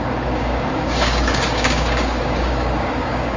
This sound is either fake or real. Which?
fake